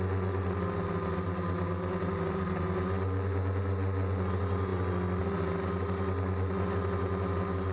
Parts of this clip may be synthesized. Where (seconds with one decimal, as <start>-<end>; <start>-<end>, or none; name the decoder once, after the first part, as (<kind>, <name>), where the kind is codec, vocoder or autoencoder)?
none